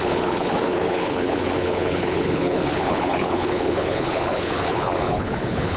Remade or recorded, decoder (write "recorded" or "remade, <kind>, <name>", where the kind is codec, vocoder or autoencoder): remade, codec, HILCodec